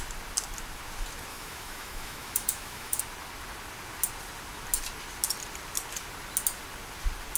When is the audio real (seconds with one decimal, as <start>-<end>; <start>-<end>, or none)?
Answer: 0.0-1.3; 3.0-7.4